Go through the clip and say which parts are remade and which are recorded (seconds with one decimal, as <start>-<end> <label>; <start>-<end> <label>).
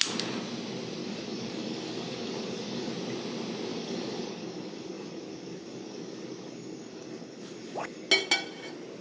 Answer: 0.0-1.0 recorded; 1.0-2.9 remade; 2.9-3.7 recorded; 3.7-8.1 remade; 8.1-9.0 recorded